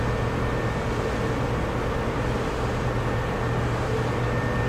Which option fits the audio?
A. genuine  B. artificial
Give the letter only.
A